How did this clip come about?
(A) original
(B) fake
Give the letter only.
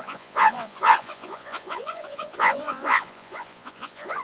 B